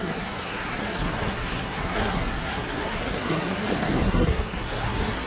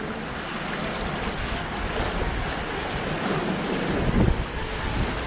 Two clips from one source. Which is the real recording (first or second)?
second